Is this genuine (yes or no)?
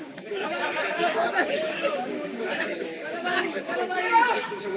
no